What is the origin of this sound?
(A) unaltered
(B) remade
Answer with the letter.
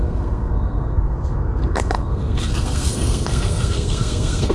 B